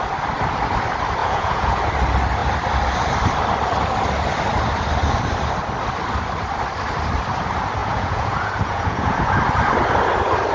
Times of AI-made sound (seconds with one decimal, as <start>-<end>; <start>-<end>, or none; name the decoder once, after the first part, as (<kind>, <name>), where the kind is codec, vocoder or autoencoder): 1.2-1.8 (vocoder, Vocos); 7.8-9.4